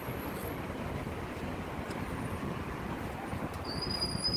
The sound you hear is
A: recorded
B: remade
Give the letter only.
A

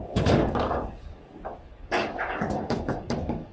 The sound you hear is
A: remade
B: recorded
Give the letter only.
A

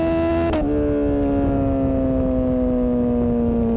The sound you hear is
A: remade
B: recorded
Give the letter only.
B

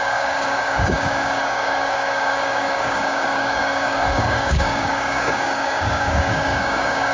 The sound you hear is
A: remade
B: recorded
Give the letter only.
A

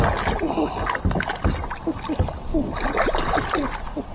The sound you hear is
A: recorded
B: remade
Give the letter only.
A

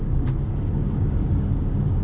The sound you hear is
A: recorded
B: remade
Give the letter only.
B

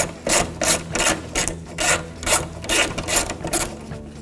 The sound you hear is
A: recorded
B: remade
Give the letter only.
A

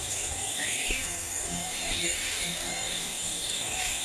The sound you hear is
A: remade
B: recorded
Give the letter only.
A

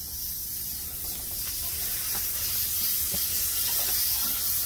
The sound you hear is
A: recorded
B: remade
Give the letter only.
A